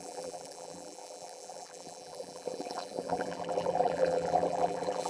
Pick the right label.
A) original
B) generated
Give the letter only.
B